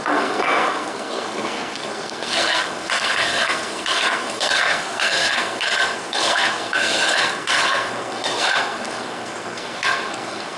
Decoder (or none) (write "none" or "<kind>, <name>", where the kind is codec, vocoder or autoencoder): codec, SNAC